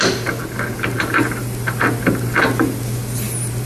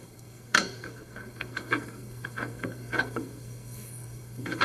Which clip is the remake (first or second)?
second